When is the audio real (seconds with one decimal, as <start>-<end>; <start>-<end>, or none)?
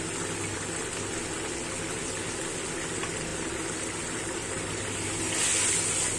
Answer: 0.0-6.2